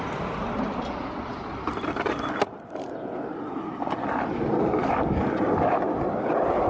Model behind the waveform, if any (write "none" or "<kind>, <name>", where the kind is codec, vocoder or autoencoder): none